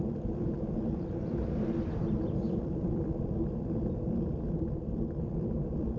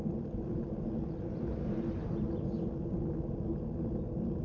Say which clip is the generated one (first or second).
first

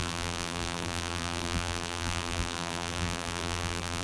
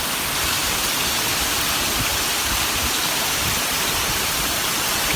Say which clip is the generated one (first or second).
first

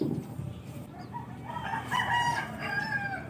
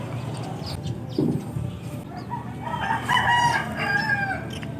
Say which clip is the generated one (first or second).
first